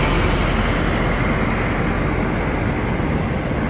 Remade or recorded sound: recorded